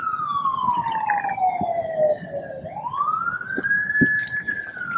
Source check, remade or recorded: recorded